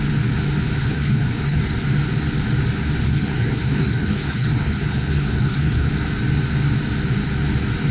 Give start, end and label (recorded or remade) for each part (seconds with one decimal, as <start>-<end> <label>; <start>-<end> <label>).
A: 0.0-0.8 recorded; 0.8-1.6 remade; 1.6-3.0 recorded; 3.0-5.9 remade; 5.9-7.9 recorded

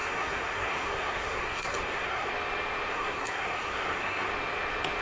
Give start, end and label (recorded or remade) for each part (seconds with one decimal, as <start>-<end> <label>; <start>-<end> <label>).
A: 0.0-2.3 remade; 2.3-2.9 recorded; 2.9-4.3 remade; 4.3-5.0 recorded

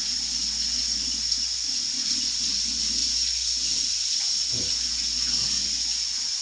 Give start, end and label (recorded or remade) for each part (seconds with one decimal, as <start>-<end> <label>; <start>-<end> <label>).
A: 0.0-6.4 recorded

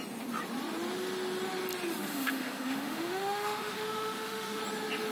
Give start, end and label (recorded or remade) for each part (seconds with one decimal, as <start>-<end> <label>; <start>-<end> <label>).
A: 0.0-2.1 recorded; 2.1-4.6 remade; 4.6-5.1 recorded